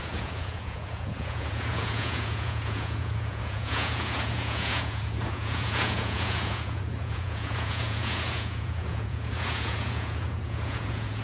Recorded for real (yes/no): no